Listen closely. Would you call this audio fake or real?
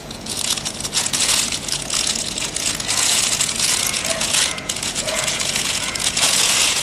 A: fake